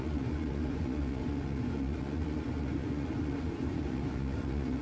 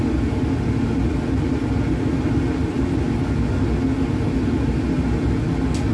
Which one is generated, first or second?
first